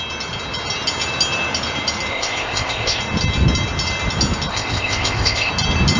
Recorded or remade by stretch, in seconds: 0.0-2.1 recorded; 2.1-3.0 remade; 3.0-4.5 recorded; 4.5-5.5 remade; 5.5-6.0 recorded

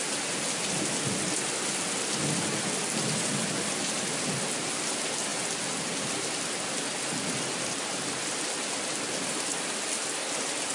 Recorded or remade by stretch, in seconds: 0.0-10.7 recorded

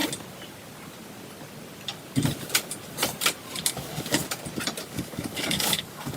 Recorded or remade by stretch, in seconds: 0.0-3.7 recorded; 3.7-4.2 remade; 4.2-4.8 recorded; 4.8-6.2 remade

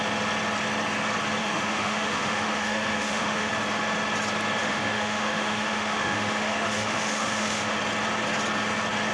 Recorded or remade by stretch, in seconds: 0.0-1.4 recorded; 1.4-3.5 remade; 3.5-4.6 recorded; 4.6-7.8 remade; 7.8-9.1 recorded

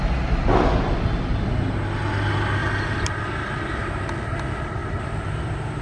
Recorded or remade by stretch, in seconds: 0.0-2.6 recorded; 2.6-3.2 remade; 3.2-3.8 recorded; 3.8-4.3 remade; 4.3-4.8 recorded; 4.8-5.8 remade

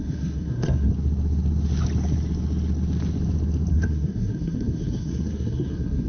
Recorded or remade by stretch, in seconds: 0.0-0.9 remade; 0.9-3.7 recorded; 3.7-6.1 remade

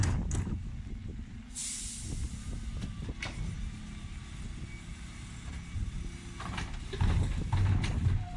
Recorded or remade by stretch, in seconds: 0.0-8.4 recorded